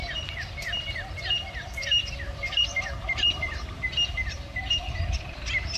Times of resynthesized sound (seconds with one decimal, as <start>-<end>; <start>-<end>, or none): 0.0-1.2; 2.0-5.8